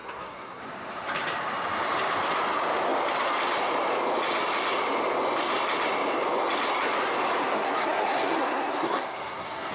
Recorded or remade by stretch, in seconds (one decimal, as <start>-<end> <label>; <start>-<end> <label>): 0.0-0.6 remade; 0.6-7.4 recorded; 7.4-9.7 remade